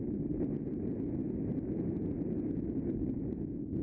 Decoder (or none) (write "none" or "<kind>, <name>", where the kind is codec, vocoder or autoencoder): none